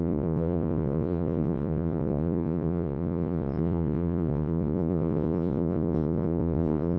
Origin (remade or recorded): remade